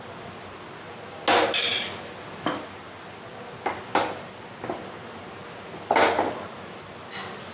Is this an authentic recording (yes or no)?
yes